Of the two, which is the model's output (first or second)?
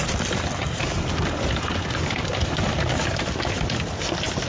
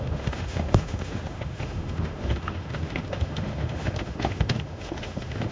second